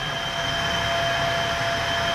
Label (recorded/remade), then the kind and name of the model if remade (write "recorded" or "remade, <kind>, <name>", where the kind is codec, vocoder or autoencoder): recorded